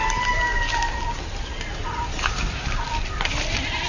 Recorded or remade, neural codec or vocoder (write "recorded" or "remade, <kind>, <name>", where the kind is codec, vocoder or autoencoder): recorded